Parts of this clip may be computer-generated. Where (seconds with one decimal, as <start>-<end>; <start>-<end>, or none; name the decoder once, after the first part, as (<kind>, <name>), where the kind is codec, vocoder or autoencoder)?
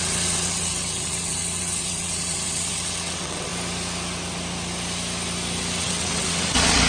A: 0.0-3.5 (vocoder, WaveNeXt); 5.8-6.9